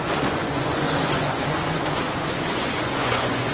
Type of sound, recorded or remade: remade